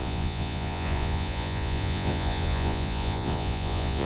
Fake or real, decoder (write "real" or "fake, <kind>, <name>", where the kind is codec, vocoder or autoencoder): fake, vocoder, Vocos